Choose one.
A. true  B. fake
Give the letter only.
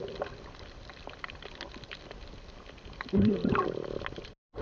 A